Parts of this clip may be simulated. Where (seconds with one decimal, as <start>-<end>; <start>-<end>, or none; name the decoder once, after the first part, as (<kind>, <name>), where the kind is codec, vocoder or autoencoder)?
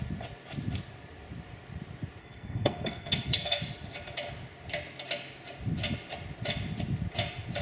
2.2-3.6 (codec, SNAC)